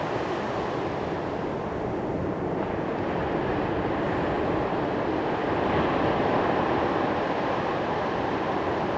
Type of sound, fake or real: real